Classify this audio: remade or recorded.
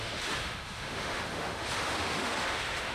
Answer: remade